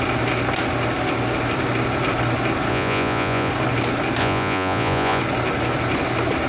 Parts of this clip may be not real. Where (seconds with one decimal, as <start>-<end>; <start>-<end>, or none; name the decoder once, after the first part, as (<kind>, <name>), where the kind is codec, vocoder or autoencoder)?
2.7-3.5 (vocoder, Vocos); 4.2-5.2